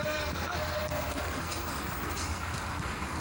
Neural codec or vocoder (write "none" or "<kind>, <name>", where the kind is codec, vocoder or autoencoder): codec, SNAC